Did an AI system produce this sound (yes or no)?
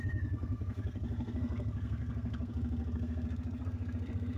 yes